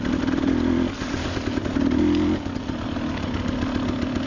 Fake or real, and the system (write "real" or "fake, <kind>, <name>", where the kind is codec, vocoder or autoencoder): real